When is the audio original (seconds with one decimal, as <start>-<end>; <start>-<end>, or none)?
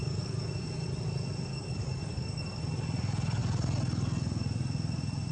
0.5-1.5; 2.6-5.3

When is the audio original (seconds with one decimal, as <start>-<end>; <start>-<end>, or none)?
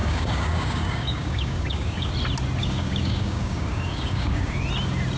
2.1-2.6; 4.6-5.2